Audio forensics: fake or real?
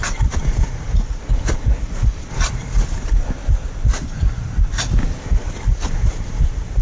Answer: fake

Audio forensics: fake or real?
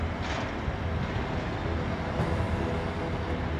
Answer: real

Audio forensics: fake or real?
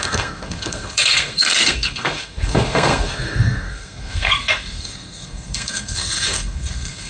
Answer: fake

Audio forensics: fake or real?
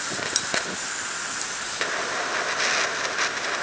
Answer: real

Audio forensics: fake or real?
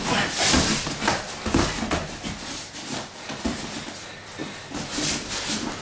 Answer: real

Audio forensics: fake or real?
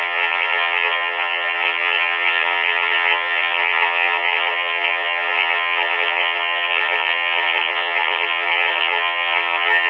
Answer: fake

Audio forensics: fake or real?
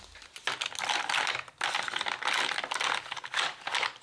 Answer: real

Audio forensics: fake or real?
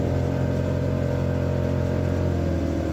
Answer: real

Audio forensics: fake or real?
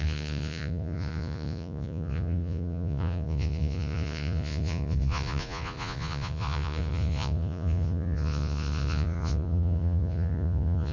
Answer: fake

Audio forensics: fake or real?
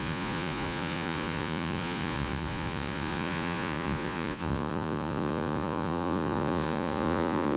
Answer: fake